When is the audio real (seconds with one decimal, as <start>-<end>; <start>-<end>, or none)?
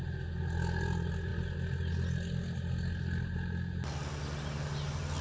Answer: 0.0-5.2